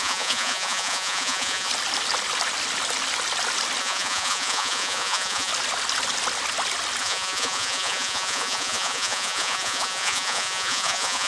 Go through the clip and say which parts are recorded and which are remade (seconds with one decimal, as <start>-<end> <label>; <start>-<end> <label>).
0.0-1.7 remade; 1.7-3.8 recorded; 3.8-5.5 remade; 5.5-7.0 recorded; 7.0-11.3 remade